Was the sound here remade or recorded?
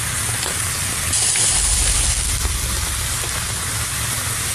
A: recorded